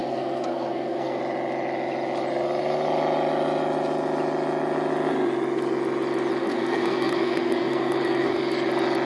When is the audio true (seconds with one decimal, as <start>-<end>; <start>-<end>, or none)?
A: 1.2-6.4; 8.4-9.0